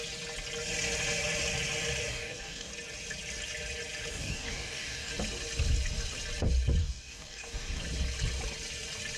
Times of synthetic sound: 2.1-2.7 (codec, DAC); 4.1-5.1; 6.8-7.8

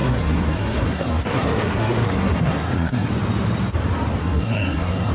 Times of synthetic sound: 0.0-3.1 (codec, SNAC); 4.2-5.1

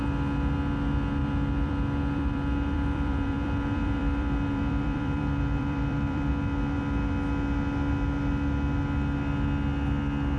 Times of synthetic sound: 1.2-6.3 (vocoder, BigVGAN v2)

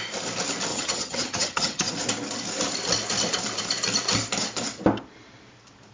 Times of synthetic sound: 0.7-1.9 (vocoder, HiFi-GAN)